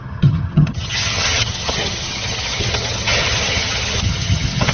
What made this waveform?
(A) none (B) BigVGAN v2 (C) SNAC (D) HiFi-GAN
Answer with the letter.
D